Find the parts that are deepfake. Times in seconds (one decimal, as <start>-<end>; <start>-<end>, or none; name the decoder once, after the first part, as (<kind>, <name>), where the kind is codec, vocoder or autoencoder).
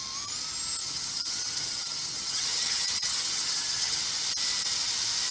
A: 0.8-4.0 (vocoder, HiFi-GAN)